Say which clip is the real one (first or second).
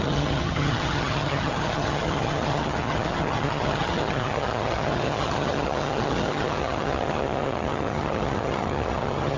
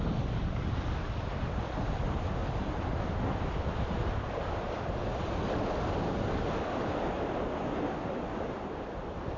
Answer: second